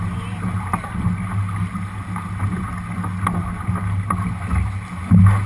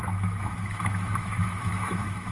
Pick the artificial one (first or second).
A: second